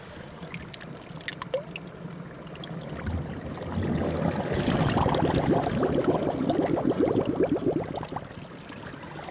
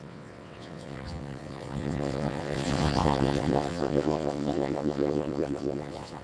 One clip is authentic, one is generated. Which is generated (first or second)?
second